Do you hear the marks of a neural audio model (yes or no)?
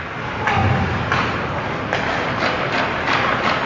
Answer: no